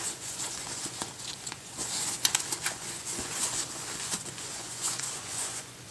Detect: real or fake fake